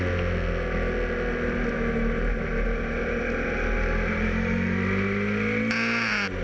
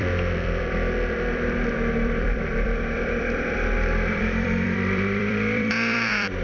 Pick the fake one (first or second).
second